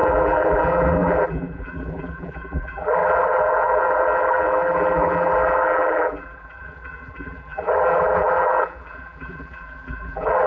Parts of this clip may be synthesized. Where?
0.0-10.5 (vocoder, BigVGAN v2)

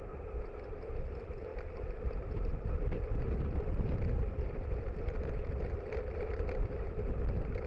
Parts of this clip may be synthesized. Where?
0.0-7.7 (vocoder, BigVGAN v2)

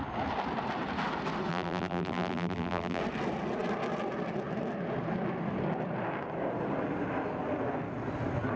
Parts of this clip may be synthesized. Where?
1.5-3.0 (vocoder, BigVGAN v2)

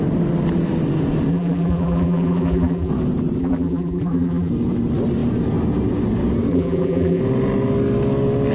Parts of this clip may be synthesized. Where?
1.3-2.9 (vocoder, BigVGAN v2); 3.4-4.5; 6.5-7.2

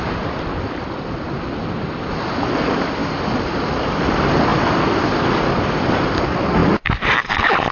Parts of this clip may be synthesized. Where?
none

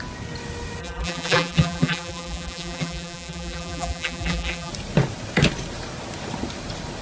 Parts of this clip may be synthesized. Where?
0.8-4.7 (vocoder, BigVGAN v2)

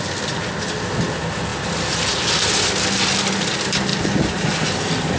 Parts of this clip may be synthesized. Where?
none